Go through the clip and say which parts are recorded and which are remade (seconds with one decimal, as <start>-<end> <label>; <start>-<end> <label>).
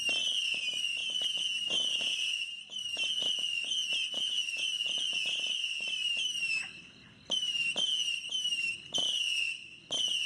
0.0-10.3 recorded